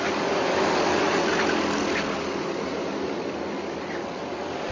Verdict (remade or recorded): recorded